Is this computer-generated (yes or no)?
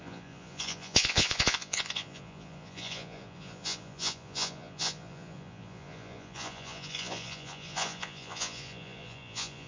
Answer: yes